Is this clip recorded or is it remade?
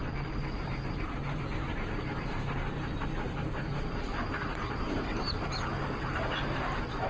remade